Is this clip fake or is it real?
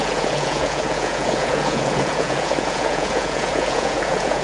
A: fake